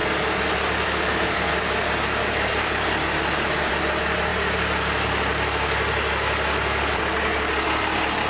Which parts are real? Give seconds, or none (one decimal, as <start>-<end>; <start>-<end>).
0.0-8.3